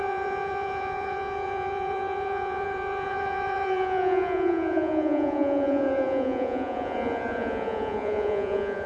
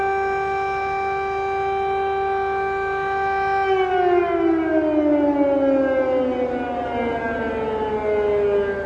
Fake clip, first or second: first